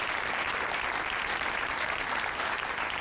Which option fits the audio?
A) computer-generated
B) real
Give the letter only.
B